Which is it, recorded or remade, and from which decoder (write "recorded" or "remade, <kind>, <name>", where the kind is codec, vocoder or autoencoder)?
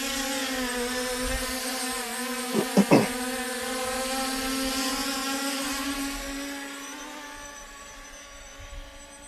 recorded